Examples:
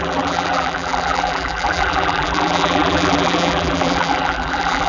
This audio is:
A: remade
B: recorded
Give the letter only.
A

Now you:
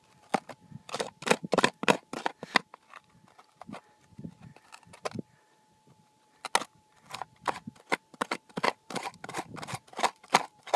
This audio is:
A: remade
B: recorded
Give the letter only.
B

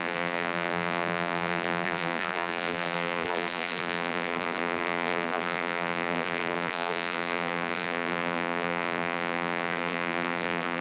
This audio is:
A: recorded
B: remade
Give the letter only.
B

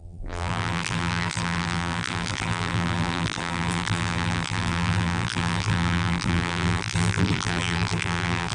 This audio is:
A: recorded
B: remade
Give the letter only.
B